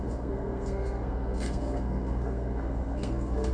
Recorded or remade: remade